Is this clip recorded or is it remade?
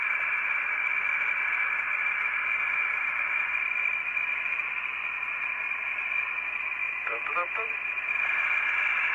remade